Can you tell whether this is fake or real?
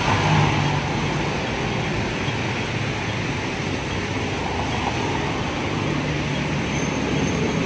real